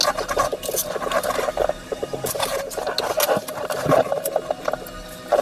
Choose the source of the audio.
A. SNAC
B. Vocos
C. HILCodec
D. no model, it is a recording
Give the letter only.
D